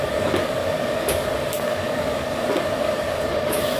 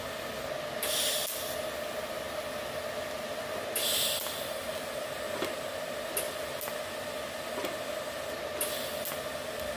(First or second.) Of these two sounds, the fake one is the first